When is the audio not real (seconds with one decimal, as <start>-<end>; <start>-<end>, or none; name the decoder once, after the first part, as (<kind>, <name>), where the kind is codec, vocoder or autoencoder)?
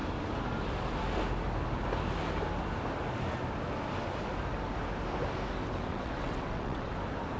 5.9-6.9 (vocoder, WaveNeXt)